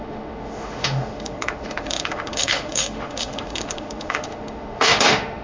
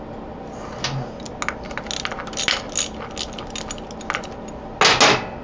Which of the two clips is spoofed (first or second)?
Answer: first